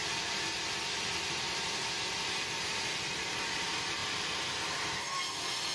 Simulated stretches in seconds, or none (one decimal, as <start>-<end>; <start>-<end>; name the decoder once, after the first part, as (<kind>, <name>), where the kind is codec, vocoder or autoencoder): 0.0-3.4 (vocoder, BigVGAN v2); 4.0-5.2